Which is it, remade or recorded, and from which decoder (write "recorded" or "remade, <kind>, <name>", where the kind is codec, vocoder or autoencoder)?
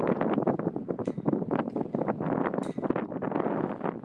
recorded